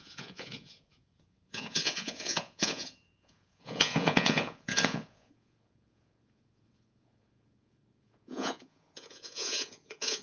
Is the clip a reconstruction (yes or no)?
yes